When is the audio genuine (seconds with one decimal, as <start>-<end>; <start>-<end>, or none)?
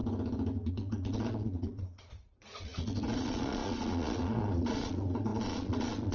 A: 0.0-0.7